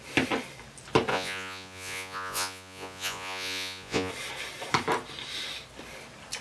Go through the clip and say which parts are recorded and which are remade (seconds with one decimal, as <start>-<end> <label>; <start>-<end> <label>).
0.0-1.1 recorded; 1.1-4.1 remade; 4.1-6.4 recorded